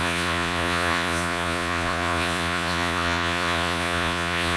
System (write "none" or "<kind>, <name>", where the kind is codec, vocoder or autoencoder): vocoder, Vocos